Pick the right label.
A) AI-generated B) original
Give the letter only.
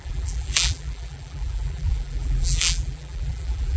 A